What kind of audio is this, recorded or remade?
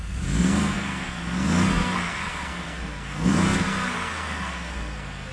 remade